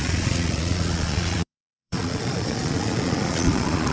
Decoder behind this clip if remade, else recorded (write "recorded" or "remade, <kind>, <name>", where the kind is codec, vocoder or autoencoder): remade, vocoder, Vocos